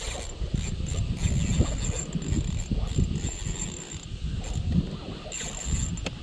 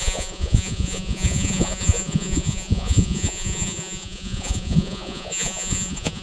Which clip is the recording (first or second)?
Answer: first